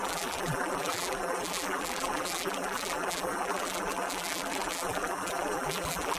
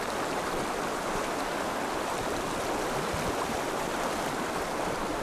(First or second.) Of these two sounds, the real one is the second